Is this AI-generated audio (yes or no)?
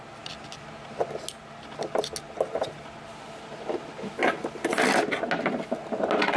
no